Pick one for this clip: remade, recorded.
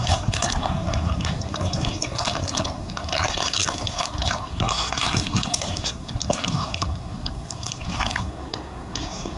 remade